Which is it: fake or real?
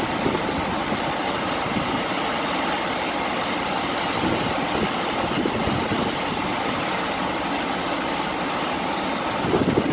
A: real